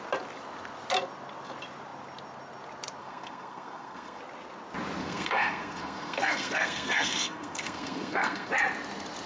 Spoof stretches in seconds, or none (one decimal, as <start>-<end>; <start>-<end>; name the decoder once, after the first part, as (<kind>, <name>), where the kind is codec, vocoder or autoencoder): 3.0-4.2 (codec, SNAC); 5.0-8.5